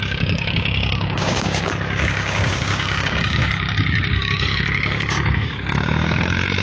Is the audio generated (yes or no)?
yes